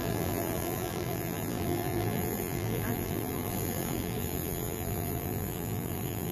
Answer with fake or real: fake